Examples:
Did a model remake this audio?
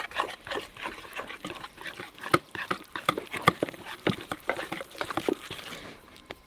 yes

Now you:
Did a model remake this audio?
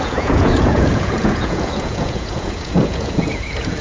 yes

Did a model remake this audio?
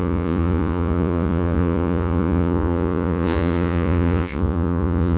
yes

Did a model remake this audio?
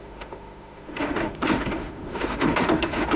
yes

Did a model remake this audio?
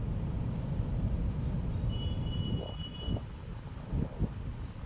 no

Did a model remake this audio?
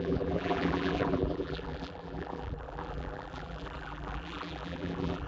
yes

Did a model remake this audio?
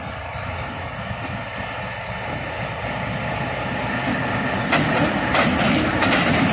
no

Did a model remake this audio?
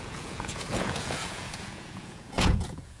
yes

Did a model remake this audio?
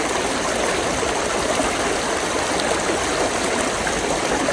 no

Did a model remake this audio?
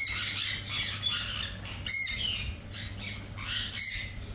no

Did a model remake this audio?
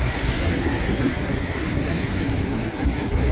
yes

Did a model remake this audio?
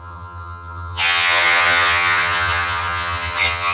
yes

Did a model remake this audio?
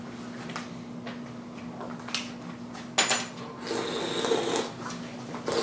no